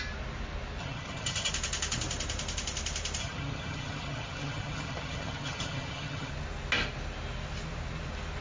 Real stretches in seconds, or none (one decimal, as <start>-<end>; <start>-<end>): 0.0-0.8; 1.5-3.2; 6.3-8.4